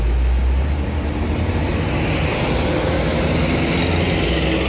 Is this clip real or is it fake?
real